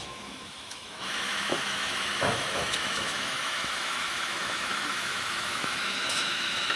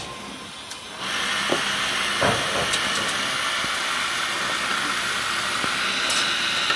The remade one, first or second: first